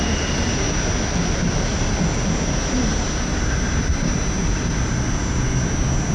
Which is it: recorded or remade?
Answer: recorded